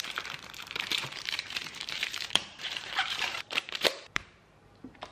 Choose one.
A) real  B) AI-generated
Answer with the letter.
B